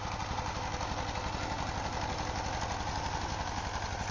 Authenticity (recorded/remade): recorded